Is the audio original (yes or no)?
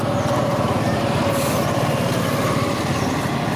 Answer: yes